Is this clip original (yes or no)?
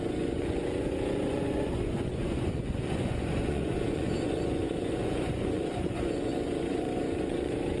no